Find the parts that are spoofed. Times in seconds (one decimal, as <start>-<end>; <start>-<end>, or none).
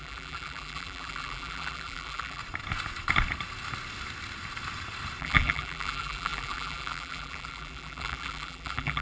0.0-2.4; 5.2-9.0